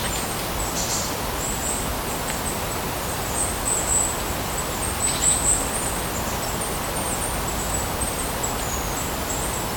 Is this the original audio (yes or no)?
yes